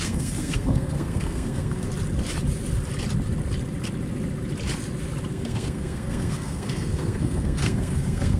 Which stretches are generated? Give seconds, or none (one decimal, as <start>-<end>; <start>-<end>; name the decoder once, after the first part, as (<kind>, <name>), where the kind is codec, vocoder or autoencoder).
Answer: 0.0-1.9 (codec, SNAC); 5.3-8.4